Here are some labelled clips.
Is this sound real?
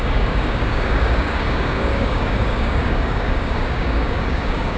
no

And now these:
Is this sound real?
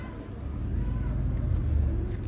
yes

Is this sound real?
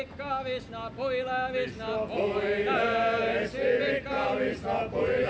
yes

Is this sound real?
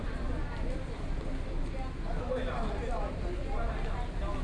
yes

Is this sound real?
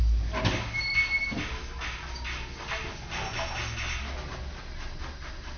yes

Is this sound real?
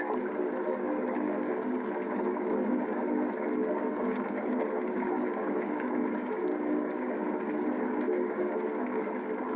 no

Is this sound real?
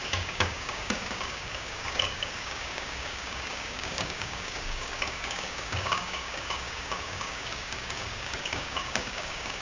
no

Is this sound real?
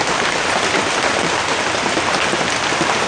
yes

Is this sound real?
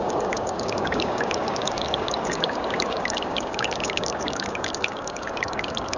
no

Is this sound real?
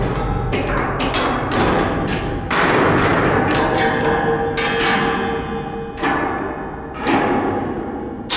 yes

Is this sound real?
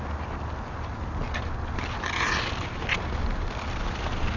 yes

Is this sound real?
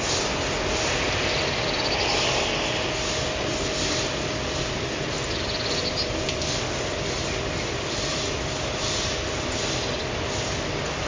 yes